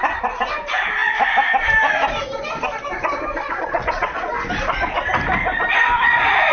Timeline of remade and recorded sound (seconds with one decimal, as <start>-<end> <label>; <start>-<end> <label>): 0.0-3.4 recorded; 3.4-4.3 remade; 4.3-6.5 recorded